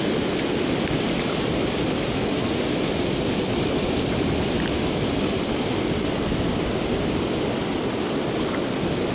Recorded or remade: recorded